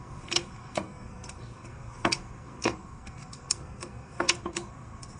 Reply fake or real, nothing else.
fake